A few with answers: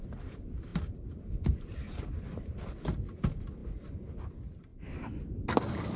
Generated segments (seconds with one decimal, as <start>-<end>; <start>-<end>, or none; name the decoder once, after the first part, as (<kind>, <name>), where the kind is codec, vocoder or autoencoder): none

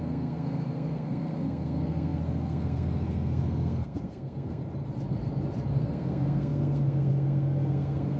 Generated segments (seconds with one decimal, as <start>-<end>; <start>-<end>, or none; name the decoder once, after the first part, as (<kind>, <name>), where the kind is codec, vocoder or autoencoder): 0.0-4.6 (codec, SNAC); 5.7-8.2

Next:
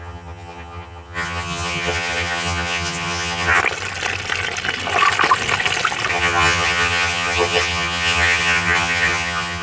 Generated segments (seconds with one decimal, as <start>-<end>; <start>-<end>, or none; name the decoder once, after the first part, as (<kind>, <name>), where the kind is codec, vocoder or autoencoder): 0.0-3.6 (vocoder, HiFi-GAN); 6.1-9.6

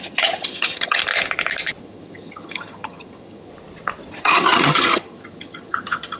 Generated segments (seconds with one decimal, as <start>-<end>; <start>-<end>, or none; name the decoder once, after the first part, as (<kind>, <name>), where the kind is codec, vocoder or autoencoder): 0.0-1.0 (vocoder, HiFi-GAN); 1.8-3.5; 4.1-6.2